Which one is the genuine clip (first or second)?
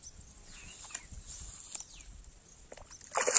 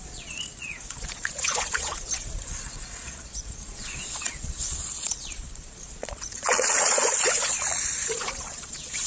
first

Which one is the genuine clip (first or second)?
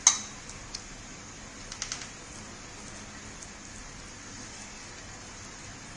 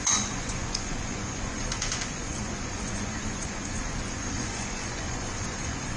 first